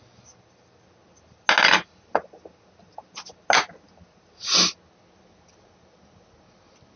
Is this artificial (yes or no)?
no